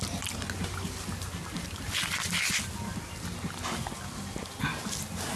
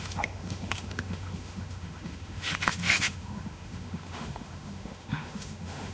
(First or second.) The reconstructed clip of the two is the second